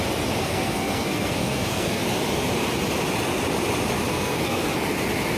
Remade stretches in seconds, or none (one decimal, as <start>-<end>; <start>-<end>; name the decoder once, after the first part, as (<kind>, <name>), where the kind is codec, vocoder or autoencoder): 0.4-2.0 (codec, SNAC); 4.1-4.7